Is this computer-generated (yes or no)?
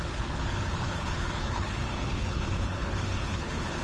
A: yes